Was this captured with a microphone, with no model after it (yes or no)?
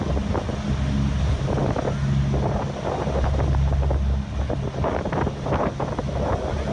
yes